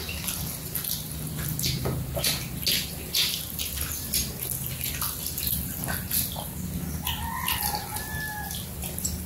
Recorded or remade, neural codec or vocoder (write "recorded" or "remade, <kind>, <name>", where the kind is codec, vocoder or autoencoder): recorded